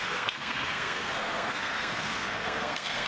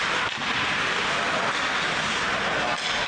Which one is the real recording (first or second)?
second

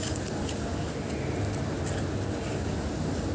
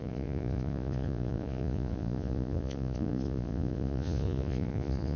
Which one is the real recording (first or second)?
first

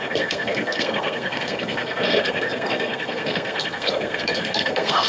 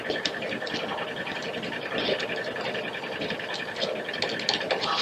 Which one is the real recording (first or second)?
second